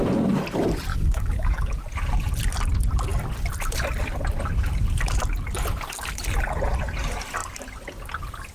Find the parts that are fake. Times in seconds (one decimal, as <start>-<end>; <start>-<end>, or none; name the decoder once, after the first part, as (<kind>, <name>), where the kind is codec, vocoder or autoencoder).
0.9-1.8 (codec, DAC)